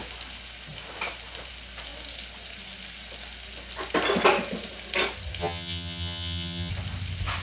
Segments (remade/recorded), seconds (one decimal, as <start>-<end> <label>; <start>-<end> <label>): 0.0-5.4 recorded; 5.4-6.7 remade; 6.7-7.4 recorded